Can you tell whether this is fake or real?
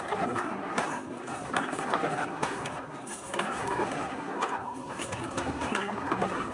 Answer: fake